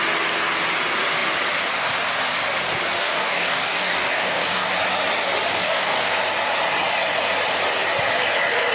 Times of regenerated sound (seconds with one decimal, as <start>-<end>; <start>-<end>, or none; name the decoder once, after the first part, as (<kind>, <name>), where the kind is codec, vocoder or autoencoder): 3.0-4.7 (codec, DAC); 5.5-6.1

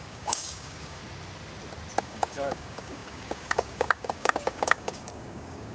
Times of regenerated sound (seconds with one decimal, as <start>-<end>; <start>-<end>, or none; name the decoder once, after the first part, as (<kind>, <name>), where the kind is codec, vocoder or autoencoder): 0.0-1.0 (codec, DAC); 2.0-5.7

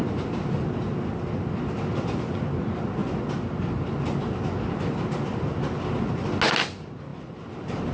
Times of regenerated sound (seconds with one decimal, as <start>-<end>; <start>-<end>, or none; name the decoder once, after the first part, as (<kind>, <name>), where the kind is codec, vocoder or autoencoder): none

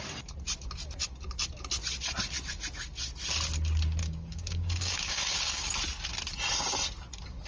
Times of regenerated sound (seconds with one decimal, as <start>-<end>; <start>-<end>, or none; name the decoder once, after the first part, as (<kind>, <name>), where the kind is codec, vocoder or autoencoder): 4.0-5.7 (codec, DAC)